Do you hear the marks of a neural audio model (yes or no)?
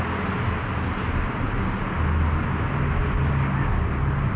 no